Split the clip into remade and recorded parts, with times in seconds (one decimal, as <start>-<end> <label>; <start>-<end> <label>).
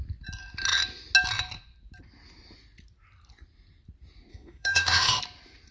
0.0-4.3 recorded; 4.3-5.2 remade; 5.2-5.7 recorded